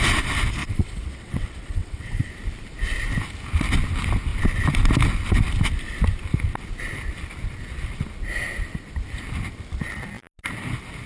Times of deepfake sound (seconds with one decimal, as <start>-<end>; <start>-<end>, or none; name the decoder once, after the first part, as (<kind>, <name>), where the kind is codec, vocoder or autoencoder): 0.6-2.3 (vocoder, WaveNeXt)